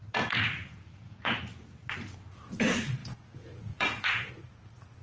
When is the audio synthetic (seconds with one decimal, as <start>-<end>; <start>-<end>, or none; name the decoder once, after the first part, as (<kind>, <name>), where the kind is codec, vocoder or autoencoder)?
0.6-1.4 (vocoder, Vocos); 3.0-4.3